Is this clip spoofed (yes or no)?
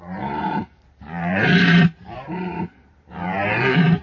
yes